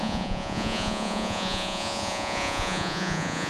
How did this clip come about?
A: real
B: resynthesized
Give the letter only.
B